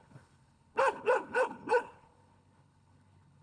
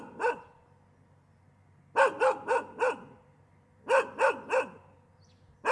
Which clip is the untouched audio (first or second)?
second